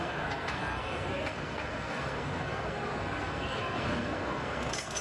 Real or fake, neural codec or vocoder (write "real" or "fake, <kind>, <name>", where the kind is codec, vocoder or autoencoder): fake, codec, SNAC